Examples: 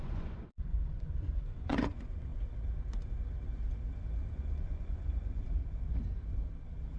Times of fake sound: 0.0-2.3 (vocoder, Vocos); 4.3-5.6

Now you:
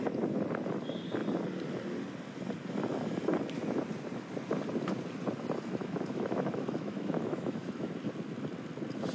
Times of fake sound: 5.8-7.9 (autoencoder, DAC-VAE)

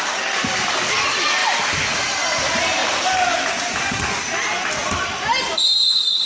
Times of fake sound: 1.4-2.4 (vocoder, BigVGAN v2); 2.8-3.8; 4.8-6.3

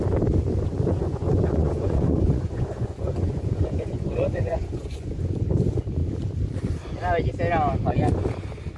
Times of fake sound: 0.9-5.3 (vocoder, Vocos)

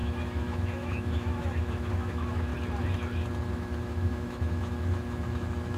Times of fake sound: 0.0-2.5 (autoencoder, DAC-VAE); 3.5-5.8

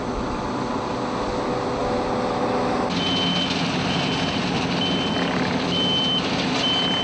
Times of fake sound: none